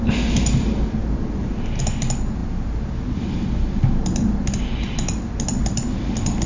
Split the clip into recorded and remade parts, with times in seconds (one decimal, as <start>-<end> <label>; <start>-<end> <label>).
0.0-6.5 recorded